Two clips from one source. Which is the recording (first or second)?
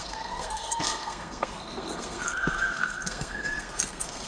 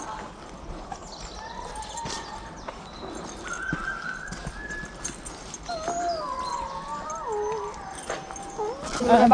second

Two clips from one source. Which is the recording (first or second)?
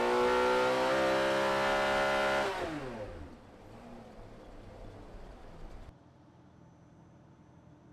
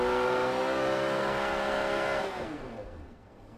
first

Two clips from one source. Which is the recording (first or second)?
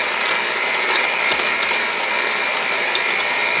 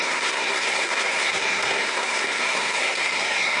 first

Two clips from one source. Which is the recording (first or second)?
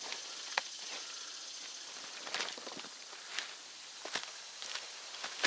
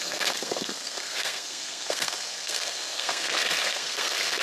first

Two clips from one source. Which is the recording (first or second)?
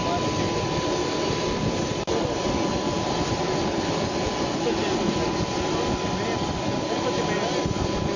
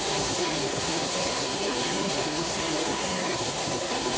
first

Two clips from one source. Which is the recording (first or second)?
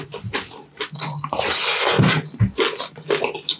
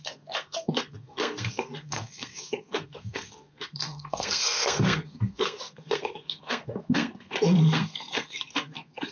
first